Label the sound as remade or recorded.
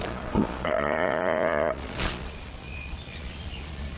remade